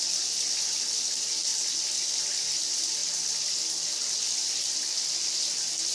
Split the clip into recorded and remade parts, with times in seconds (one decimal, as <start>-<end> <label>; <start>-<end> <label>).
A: 0.0-5.9 recorded